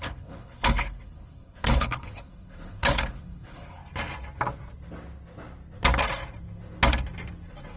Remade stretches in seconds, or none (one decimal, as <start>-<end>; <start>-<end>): 0.0-3.8